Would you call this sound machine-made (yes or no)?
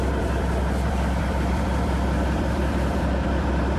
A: yes